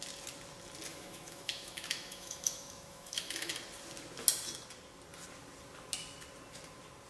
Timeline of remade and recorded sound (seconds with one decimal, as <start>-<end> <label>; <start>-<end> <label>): 0.0-0.9 recorded; 0.9-3.5 remade; 3.5-7.1 recorded